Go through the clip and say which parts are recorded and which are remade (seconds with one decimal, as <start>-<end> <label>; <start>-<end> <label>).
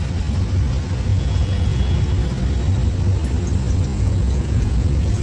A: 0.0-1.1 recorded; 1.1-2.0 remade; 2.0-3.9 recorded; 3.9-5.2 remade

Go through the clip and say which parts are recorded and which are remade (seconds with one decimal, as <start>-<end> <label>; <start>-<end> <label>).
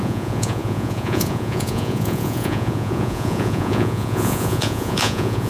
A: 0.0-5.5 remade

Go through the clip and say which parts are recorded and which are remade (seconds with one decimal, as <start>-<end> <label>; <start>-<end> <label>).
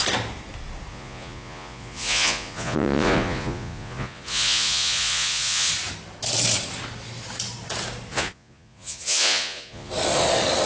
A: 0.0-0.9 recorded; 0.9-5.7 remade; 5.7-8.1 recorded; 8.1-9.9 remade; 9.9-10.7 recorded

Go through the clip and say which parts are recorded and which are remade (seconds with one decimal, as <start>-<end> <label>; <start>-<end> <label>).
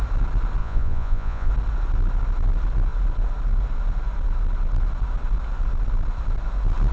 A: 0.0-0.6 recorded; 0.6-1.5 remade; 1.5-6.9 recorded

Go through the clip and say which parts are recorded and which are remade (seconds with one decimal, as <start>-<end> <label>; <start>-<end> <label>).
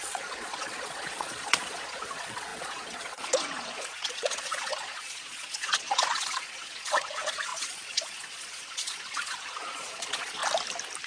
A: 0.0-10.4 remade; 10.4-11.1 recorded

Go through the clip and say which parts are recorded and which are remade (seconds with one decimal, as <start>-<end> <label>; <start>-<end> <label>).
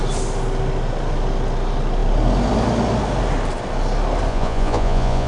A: 0.0-4.3 recorded; 4.3-5.3 remade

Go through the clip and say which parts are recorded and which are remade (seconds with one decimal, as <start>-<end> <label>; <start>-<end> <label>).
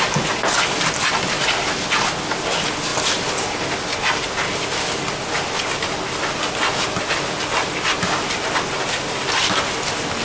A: 0.0-10.2 recorded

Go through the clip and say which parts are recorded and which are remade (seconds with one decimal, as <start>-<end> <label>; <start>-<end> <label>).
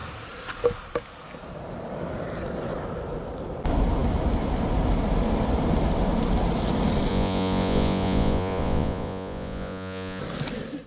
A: 0.0-7.1 recorded; 7.1-10.2 remade; 10.2-10.9 recorded